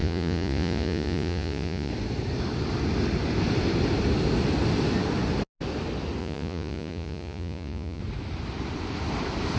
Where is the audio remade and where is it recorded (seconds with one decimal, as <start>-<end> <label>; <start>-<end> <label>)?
0.0-1.9 remade; 1.9-6.2 recorded; 6.2-8.0 remade; 8.0-9.6 recorded